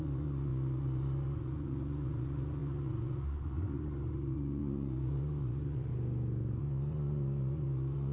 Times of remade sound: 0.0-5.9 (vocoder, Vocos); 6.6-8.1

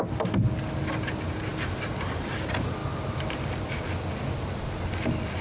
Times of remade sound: none

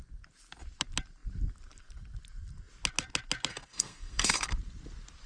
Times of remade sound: 3.5-4.5 (codec, SNAC)

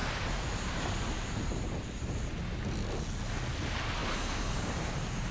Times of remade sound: 0.0-2.3 (vocoder, BigVGAN v2); 4.0-5.3

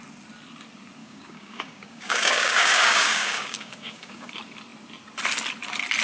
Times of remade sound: 1.0-4.3 (codec, DAC)

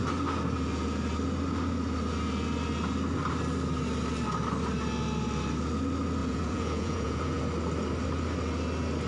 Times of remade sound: 6.2-7.4 (vocoder, Vocos)

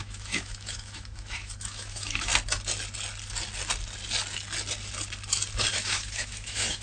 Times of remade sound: 0.0-2.3 (autoencoder, DAC-VAE); 5.7-6.8